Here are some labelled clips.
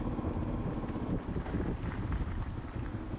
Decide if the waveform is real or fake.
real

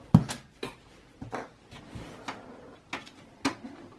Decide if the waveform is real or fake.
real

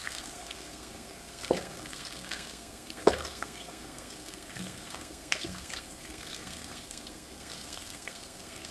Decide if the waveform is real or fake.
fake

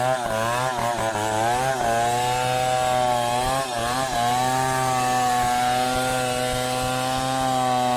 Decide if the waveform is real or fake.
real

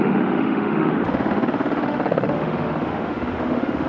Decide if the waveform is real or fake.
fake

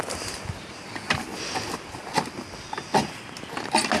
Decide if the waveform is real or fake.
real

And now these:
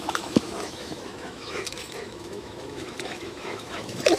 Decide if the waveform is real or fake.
fake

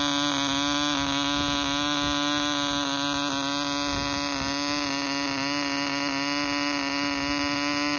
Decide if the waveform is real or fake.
real